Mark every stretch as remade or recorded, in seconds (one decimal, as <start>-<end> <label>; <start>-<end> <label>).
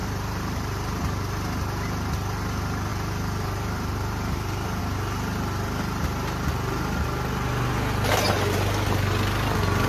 0.0-1.0 remade; 1.0-2.9 recorded; 2.9-4.8 remade; 4.8-9.9 recorded